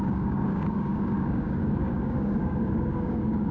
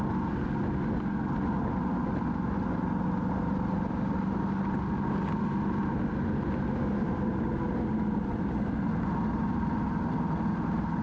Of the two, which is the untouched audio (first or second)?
second